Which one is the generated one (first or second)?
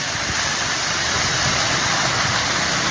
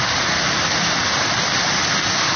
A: first